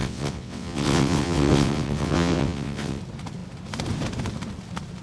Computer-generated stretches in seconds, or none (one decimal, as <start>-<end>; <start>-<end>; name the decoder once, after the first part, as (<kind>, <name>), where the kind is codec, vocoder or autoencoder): 0.0-3.0 (vocoder, WaveNeXt)